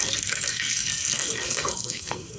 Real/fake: fake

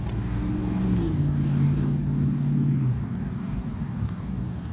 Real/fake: fake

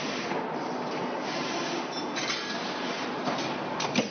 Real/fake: real